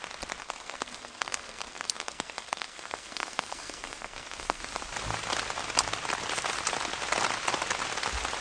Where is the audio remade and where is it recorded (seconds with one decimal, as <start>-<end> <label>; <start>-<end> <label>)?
0.0-0.4 recorded; 0.4-4.6 remade; 4.6-8.4 recorded